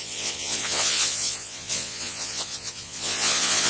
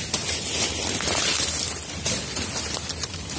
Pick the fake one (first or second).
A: first